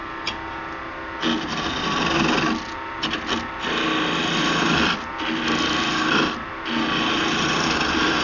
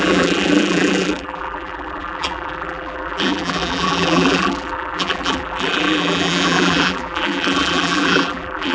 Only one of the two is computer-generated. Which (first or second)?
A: second